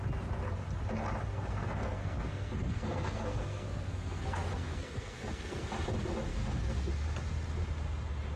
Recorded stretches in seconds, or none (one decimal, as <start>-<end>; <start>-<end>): 0.0-1.3; 5.7-6.3; 6.9-8.4